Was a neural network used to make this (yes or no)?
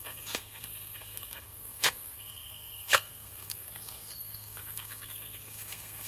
yes